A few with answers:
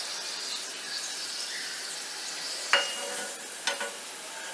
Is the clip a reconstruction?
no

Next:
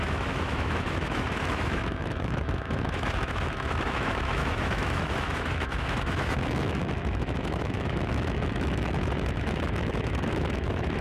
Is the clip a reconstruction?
yes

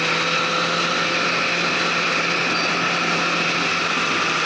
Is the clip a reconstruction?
no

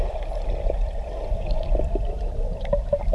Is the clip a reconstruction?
no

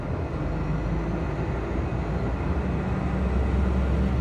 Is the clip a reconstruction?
no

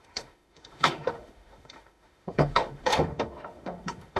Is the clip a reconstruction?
yes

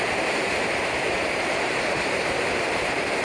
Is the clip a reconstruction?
yes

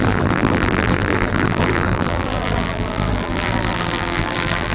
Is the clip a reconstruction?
yes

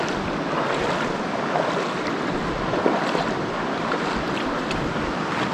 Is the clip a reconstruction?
no